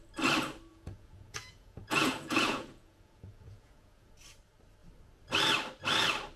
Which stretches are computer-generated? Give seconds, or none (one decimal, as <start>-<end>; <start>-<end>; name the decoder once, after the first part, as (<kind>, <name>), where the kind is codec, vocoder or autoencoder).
0.7-4.1 (vocoder, Vocos)